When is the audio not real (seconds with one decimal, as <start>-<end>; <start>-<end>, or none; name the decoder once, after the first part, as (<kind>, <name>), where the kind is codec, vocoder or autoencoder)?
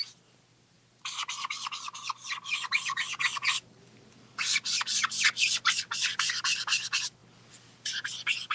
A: none